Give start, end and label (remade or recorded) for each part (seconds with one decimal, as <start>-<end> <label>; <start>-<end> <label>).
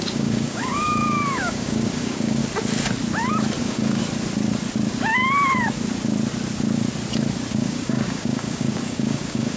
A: 0.0-2.4 remade; 2.4-3.6 recorded; 3.6-4.0 remade; 4.0-7.5 recorded; 7.5-9.6 remade